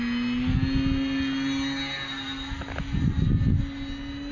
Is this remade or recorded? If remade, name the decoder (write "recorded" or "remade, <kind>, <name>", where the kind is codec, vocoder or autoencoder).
recorded